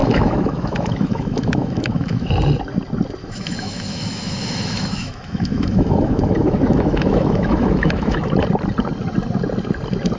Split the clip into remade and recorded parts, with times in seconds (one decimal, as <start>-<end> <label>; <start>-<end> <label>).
0.0-2.3 remade; 2.3-3.2 recorded; 3.2-8.3 remade; 8.3-10.2 recorded